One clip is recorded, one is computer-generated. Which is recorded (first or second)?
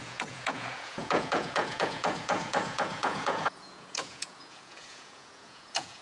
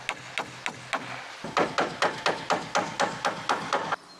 second